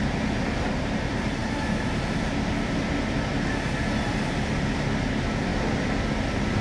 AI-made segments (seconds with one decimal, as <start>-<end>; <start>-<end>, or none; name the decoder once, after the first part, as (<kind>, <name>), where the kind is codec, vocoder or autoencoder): 0.0-4.5 (vocoder, BigVGAN v2); 5.1-5.5; 6.1-6.6